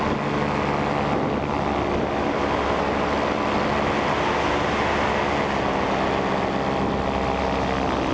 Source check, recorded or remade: recorded